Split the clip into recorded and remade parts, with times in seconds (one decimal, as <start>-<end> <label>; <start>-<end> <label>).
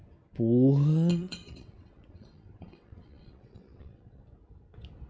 0.0-1.1 recorded; 1.1-4.2 remade; 4.2-5.1 recorded